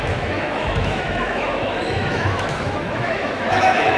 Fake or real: fake